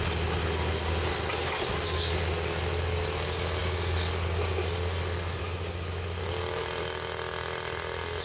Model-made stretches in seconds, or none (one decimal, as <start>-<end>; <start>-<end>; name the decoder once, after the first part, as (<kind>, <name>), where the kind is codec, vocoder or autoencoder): none